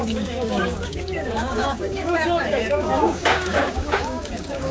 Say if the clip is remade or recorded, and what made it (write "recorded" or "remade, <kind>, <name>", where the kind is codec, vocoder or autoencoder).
remade, codec, DAC